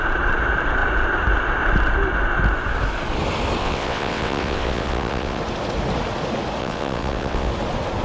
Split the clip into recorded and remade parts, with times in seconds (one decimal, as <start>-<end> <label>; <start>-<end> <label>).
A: 0.0-3.6 recorded; 3.6-5.4 remade; 5.4-6.6 recorded; 6.6-7.5 remade; 7.5-8.0 recorded